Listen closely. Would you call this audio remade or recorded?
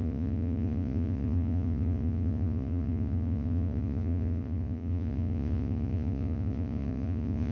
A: remade